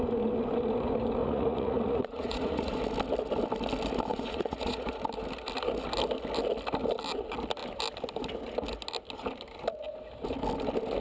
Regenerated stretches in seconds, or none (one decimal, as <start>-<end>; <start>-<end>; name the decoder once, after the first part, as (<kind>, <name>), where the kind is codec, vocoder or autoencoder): 1.2-2.8 (vocoder, Vocos); 4.1-5.0